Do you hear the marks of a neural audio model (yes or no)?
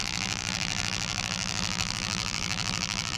yes